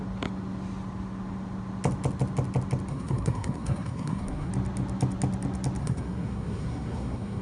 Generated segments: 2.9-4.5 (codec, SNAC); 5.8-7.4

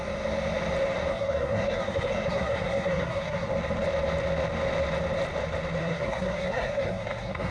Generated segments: 1.1-3.5 (codec, SNAC); 5.8-7.5

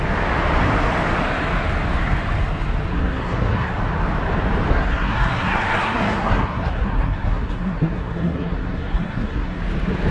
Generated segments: 2.9-3.8 (codec, SNAC); 4.7-9.6

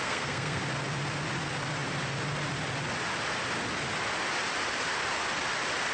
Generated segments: 0.0-0.6 (codec, SNAC)